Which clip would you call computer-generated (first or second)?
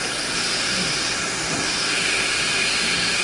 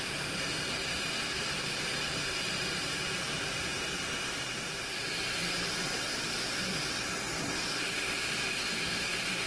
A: second